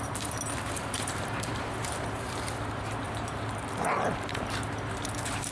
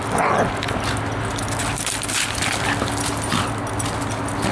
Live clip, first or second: second